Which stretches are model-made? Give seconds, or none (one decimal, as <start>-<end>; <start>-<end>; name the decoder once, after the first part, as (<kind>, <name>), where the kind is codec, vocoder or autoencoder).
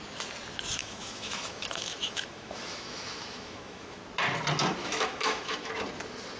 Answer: 0.8-4.0 (autoencoder, DAC-VAE); 4.8-5.7